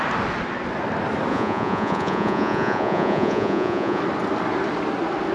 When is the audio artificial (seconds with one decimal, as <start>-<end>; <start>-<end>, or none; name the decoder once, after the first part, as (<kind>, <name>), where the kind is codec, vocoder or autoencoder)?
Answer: 1.3-4.0 (vocoder, Vocos)